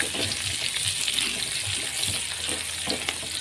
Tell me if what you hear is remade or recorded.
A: recorded